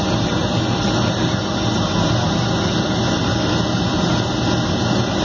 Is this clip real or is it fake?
real